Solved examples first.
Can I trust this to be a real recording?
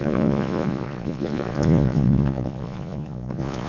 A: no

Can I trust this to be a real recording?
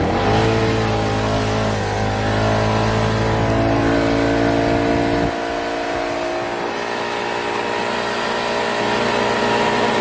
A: yes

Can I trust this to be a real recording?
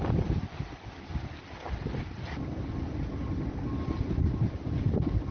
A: yes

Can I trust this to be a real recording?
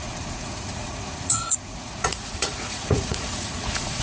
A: no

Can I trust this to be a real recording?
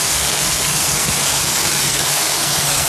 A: no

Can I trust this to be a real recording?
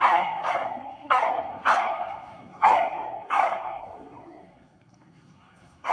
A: no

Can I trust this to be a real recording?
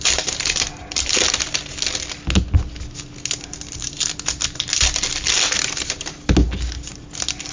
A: yes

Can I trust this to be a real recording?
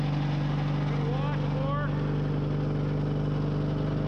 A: yes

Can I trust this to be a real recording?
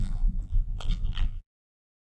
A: no